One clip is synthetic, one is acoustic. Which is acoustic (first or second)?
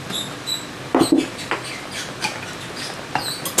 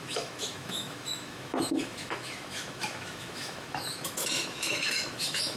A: first